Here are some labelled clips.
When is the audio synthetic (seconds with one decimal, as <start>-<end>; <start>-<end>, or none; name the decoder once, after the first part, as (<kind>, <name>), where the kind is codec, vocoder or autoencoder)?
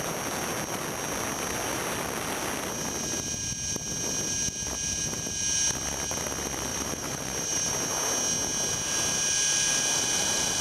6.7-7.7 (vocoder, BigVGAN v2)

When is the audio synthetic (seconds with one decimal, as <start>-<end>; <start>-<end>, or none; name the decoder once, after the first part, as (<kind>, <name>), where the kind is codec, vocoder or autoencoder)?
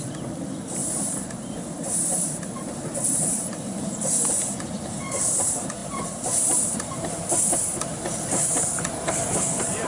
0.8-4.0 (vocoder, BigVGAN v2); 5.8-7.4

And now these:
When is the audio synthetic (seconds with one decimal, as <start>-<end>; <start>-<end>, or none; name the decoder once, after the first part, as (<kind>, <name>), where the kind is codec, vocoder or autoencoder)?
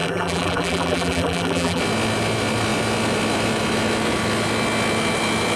0.0-1.8 (vocoder, BigVGAN v2)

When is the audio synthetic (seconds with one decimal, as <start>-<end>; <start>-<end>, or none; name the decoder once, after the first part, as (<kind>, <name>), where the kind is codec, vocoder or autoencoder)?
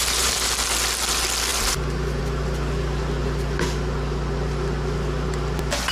0.0-0.5 (vocoder, BigVGAN v2)